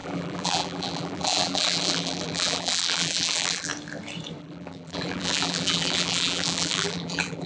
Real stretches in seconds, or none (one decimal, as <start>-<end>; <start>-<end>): 3.7-4.4